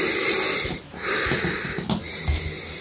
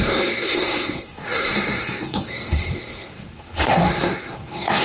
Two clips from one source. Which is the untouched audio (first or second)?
first